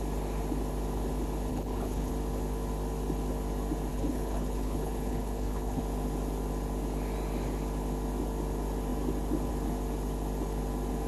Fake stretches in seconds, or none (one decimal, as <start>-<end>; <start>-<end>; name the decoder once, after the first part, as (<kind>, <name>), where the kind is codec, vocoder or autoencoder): 1.5-2.1 (codec, HILCodec); 3.9-5.8